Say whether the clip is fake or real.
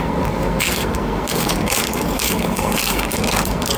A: fake